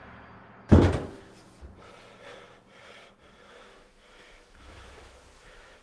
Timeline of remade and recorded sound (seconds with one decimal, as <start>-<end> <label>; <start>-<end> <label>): 0.0-3.5 recorded; 3.5-5.8 remade